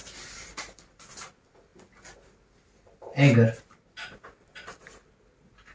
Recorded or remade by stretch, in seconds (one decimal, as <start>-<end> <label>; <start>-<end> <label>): 0.0-5.7 recorded